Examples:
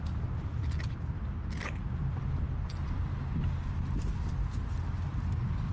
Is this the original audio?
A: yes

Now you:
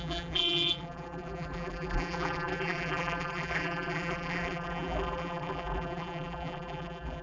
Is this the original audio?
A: no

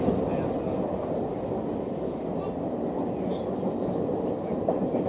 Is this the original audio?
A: yes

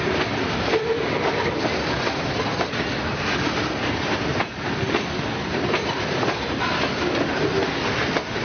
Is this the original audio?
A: yes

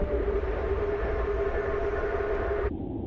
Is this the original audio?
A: no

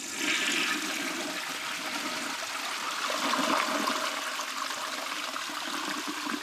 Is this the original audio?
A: yes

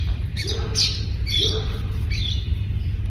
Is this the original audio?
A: no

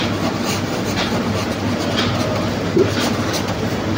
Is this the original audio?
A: yes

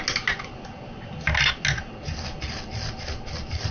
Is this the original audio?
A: yes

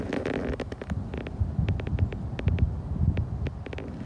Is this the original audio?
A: yes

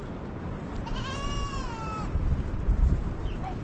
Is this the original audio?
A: yes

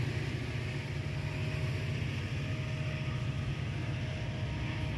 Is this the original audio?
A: yes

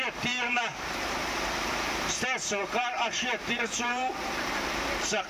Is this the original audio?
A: no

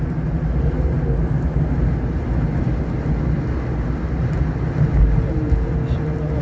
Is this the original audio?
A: yes